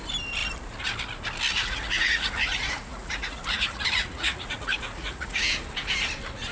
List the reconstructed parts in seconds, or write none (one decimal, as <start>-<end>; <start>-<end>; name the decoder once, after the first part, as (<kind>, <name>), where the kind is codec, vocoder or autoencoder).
1.5-5.4 (vocoder, Vocos)